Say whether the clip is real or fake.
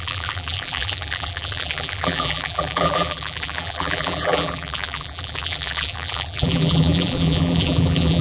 fake